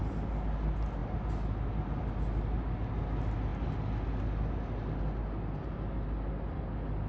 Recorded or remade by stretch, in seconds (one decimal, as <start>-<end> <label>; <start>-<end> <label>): 0.0-7.1 recorded